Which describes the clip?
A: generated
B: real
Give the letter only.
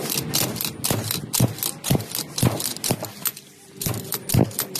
B